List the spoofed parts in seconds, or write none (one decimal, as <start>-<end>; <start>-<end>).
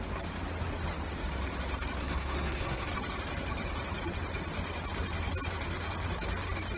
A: 2.0-2.9